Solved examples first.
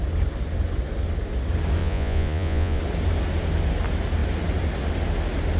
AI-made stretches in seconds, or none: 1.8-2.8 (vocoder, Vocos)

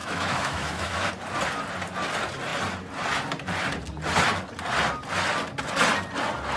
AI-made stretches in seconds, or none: 0.0-1.1 (autoencoder, DAC-VAE)

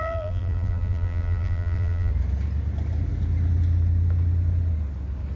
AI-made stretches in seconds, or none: 0.0-2.1 (vocoder, BigVGAN v2)

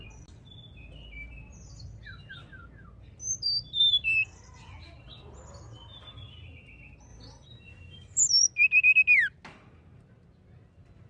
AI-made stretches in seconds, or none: 7.1-8.2 (vocoder, BigVGAN v2)